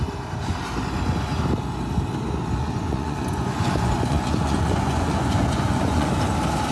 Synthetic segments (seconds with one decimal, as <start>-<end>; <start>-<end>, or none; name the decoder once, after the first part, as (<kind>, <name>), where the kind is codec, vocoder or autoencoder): 2.6-6.1 (vocoder, Vocos)